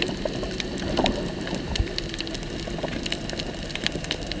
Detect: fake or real real